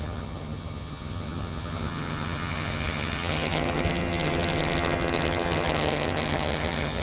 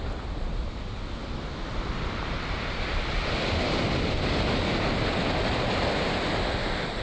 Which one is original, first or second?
second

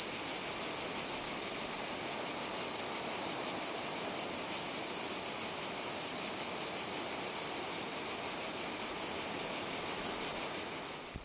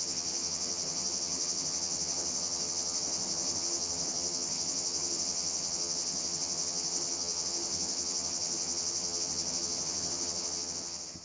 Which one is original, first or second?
first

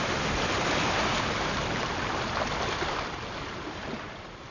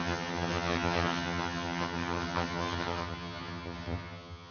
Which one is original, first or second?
first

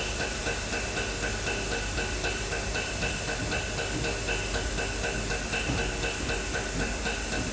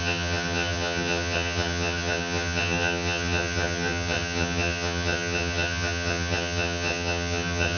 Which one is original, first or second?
first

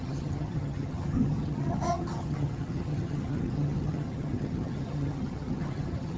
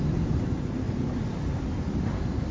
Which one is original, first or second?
second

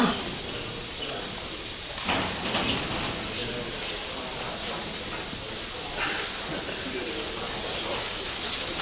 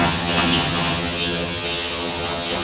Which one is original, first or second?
first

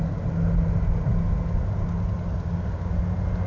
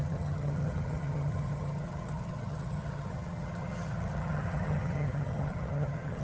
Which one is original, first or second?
first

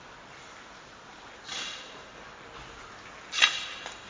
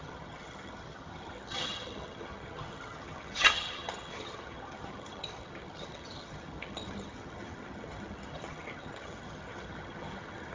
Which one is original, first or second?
first